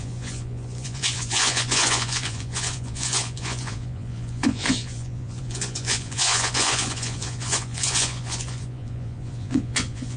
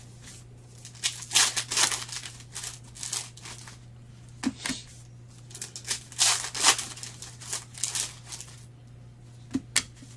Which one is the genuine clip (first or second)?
second